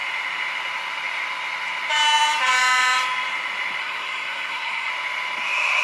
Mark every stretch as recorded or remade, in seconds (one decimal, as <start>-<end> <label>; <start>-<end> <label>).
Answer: 0.0-3.8 recorded; 3.8-4.9 remade; 4.9-5.8 recorded